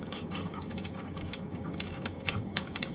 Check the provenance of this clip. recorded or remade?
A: remade